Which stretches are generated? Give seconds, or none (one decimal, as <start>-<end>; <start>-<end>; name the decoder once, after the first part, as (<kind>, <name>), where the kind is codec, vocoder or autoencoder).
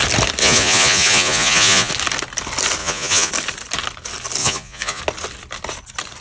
0.4-1.9 (vocoder, Vocos); 2.8-3.3; 4.4-5.0